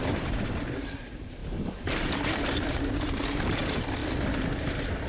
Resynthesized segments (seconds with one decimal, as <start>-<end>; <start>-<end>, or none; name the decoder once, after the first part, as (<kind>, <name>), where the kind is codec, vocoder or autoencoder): 0.0-4.0 (vocoder, BigVGAN v2)